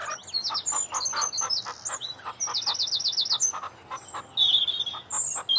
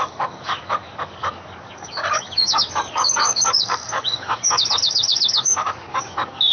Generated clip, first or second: second